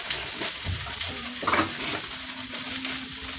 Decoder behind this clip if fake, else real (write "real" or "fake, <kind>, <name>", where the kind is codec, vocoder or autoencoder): real